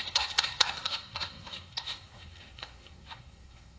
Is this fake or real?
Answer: fake